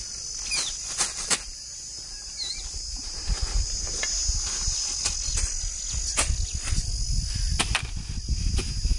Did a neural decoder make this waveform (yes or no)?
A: no